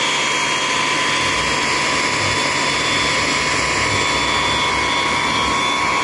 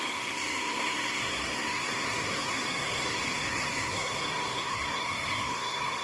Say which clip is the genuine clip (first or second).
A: first